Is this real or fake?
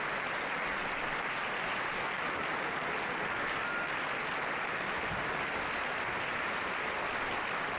real